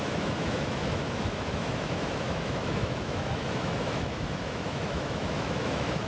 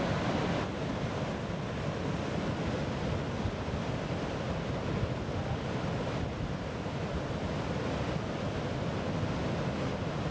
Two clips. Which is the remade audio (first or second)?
first